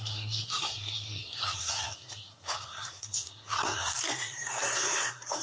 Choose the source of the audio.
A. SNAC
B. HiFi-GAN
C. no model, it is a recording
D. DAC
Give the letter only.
A